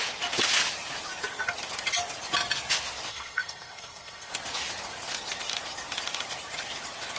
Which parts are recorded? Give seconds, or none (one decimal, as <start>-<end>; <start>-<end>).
0.0-3.1; 4.3-7.2